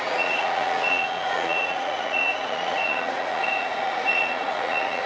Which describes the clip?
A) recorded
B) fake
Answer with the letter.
B